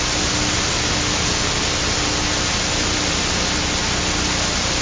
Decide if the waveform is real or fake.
real